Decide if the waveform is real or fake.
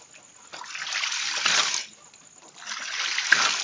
real